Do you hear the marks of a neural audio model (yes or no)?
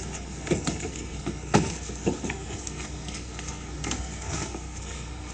yes